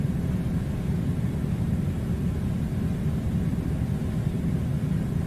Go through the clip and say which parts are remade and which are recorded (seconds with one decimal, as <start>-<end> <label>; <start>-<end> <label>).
0.0-5.3 recorded